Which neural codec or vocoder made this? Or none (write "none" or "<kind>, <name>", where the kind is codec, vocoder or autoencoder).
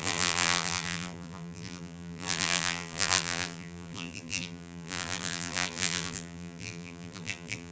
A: vocoder, BigVGAN v2